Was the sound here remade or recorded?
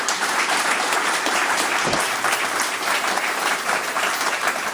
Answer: remade